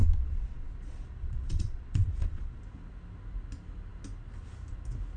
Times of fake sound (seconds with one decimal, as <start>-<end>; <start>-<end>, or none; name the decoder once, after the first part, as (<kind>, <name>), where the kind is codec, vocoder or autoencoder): 0.0-2.6 (vocoder, Vocos)